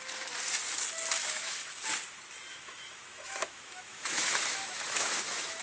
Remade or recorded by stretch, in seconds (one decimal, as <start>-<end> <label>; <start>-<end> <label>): 0.0-1.2 recorded; 1.2-1.8 remade; 1.8-2.5 recorded; 2.5-5.6 remade